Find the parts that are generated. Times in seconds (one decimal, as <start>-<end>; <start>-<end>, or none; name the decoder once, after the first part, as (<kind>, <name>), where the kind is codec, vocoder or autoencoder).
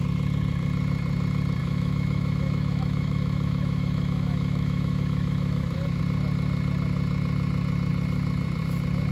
1.6-6.0 (autoencoder, DAC-VAE)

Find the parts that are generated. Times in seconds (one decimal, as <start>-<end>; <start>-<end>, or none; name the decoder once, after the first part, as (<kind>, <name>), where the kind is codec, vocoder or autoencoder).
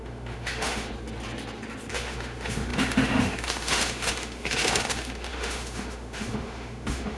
0.0-0.9 (autoencoder, DAC-VAE); 1.9-7.2